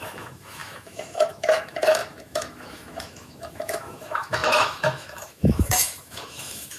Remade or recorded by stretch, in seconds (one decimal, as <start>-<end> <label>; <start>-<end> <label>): 0.0-6.8 remade